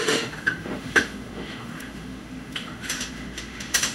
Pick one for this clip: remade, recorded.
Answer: remade